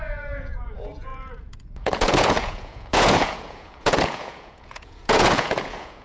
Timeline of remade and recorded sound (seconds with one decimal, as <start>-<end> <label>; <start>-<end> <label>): 0.0-6.0 remade